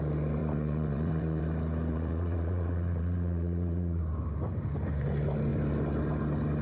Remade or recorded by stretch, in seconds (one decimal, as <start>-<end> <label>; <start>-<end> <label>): 0.0-0.4 recorded; 0.4-1.4 remade; 1.4-1.9 recorded; 1.9-4.0 remade; 4.0-6.6 recorded